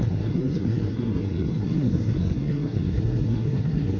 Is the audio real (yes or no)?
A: no